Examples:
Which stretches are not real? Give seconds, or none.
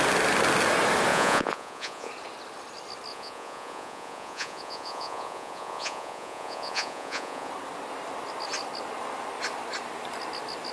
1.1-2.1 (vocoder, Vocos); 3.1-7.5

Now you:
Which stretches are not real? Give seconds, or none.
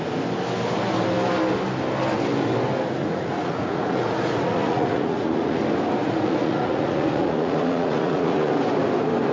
3.0-5.6 (vocoder, Vocos); 6.0-8.5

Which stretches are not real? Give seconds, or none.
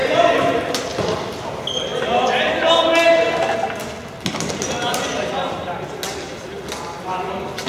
none